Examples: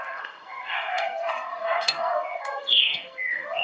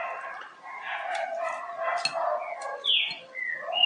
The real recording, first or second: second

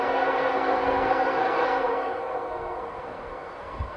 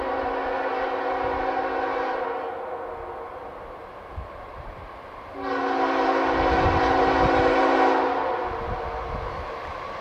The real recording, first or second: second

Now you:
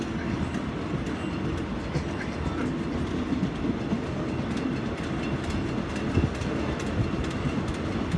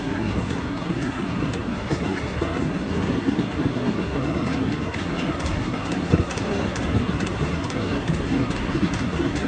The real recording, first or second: first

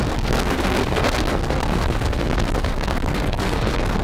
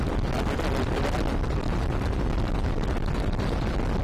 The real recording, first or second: second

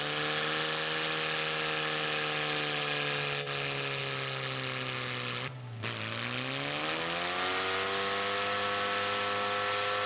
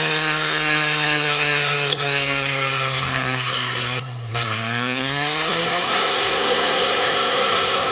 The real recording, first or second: first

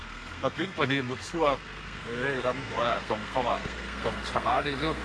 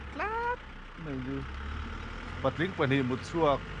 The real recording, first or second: second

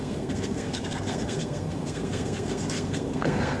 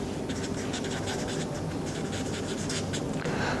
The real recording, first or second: second